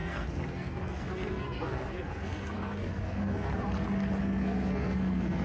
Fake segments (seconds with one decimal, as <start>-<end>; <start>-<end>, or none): 0.0-3.5; 4.2-5.4

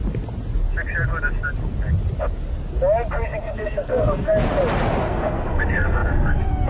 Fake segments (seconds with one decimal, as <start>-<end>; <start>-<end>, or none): 3.4-4.3; 5.0-6.7

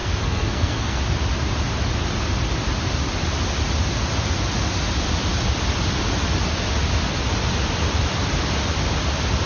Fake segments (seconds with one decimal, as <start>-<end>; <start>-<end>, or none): 0.0-1.0

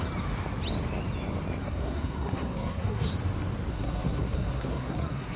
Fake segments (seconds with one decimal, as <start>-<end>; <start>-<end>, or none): 1.6-3.1; 3.7-5.4

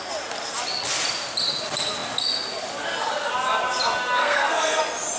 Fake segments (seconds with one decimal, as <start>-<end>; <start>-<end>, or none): 4.2-4.8